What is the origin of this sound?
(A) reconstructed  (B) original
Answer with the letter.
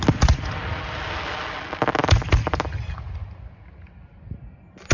B